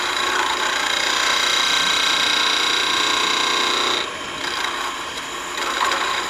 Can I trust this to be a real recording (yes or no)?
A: yes